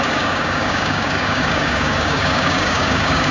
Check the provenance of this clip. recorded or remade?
remade